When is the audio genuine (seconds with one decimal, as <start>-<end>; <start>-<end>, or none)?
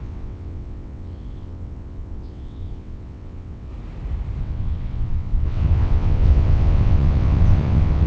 3.7-4.4